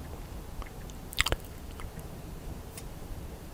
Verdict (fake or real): fake